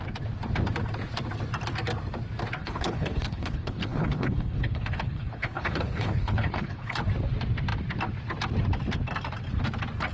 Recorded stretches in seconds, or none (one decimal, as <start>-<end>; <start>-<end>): 0.0-2.6; 7.0-10.1